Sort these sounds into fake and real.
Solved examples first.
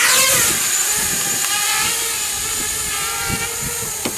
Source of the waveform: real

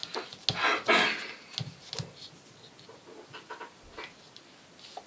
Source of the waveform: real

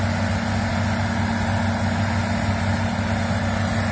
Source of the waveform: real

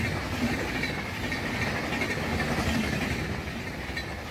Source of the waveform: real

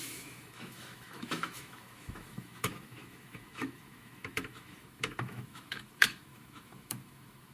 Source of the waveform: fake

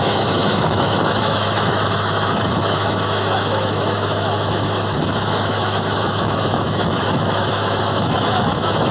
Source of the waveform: fake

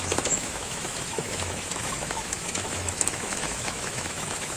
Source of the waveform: fake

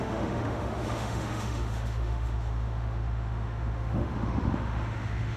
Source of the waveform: fake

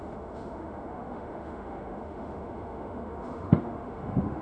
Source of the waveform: fake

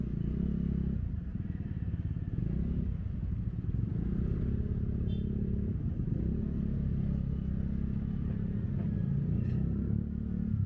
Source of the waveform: real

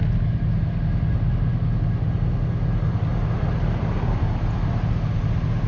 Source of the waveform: real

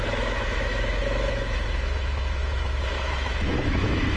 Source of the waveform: fake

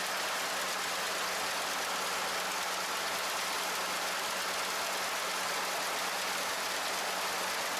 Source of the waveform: real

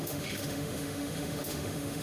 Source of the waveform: fake